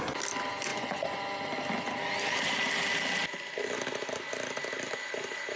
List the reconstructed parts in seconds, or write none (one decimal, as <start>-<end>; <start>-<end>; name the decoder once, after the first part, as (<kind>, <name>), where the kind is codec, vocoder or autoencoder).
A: 0.7-1.2 (vocoder, Vocos)